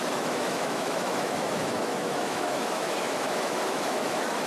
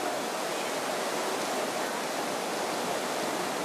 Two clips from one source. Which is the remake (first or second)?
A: first